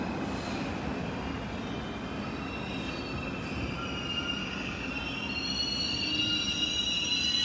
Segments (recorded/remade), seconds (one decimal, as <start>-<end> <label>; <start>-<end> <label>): 0.0-4.4 recorded; 4.4-4.9 remade; 4.9-7.4 recorded